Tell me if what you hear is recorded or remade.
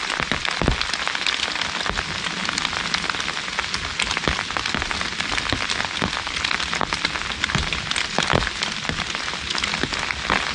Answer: recorded